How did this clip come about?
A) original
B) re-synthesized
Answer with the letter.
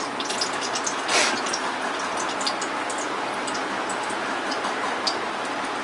A